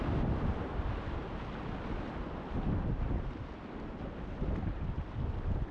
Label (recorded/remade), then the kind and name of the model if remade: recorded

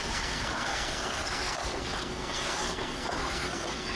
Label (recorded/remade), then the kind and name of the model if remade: remade, codec, SNAC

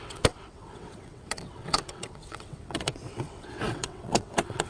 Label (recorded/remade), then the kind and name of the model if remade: remade, vocoder, WaveNeXt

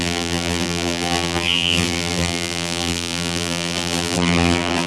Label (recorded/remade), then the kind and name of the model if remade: remade, vocoder, BigVGAN v2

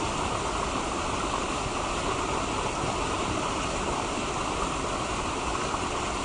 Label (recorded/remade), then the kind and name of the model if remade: recorded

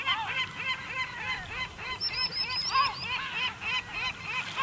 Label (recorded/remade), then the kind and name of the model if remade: recorded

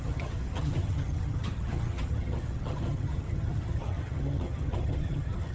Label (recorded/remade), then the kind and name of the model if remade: remade, vocoder, HiFi-GAN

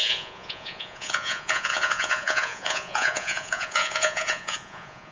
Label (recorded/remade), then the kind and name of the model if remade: remade, vocoder, Vocos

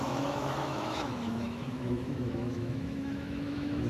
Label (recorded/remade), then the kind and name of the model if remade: remade, autoencoder, DAC-VAE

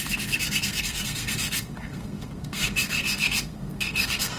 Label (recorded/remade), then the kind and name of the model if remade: remade, codec, SNAC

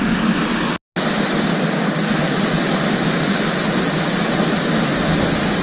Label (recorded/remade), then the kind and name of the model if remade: recorded